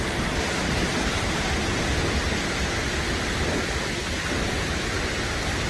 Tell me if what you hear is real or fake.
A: real